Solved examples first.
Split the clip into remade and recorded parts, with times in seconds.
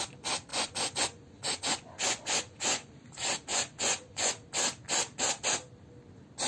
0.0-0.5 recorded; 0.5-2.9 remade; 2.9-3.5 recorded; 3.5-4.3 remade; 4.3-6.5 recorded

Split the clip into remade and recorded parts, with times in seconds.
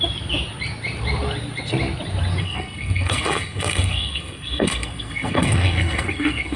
0.0-2.4 recorded; 2.4-6.6 remade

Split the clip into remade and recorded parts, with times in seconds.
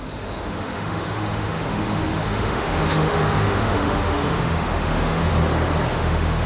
0.0-5.3 remade; 5.3-5.9 recorded; 5.9-6.5 remade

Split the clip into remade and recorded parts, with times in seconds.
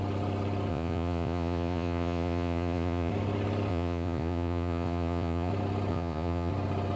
0.0-0.7 recorded; 0.7-3.1 remade; 3.1-3.7 recorded; 3.7-5.5 remade; 5.5-5.9 recorded; 5.9-6.5 remade; 6.5-7.0 recorded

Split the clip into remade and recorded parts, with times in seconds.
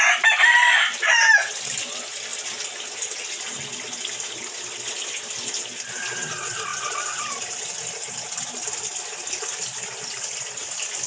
0.0-11.1 recorded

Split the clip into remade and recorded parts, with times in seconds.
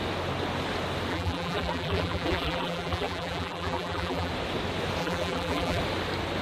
0.0-1.1 recorded; 1.1-4.3 remade; 4.3-5.0 recorded; 5.0-5.8 remade; 5.8-6.4 recorded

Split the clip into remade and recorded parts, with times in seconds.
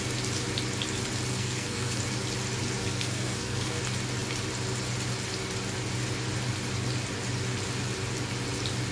0.0-1.3 recorded; 1.3-2.0 remade; 2.0-2.8 recorded; 2.8-3.8 remade; 3.8-8.9 recorded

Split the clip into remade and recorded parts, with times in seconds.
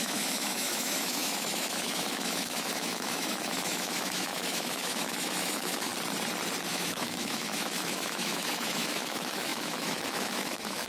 0.0-5.9 remade; 5.9-6.7 recorded; 6.7-10.9 remade